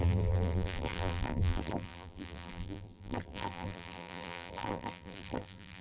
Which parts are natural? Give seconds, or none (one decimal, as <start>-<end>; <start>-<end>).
none